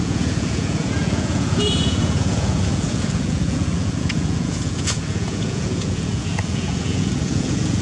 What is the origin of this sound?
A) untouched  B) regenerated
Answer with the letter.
B